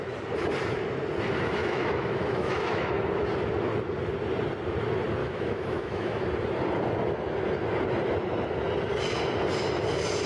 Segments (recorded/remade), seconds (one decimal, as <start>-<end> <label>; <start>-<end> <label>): 0.0-1.6 recorded; 1.6-2.9 remade; 2.9-5.2 recorded; 5.2-6.2 remade; 6.2-10.3 recorded